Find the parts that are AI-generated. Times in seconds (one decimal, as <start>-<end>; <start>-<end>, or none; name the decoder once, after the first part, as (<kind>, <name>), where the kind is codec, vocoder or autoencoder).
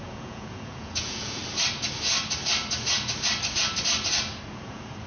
0.0-1.4 (vocoder, Vocos); 4.5-5.1